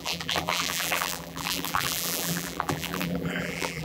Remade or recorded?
remade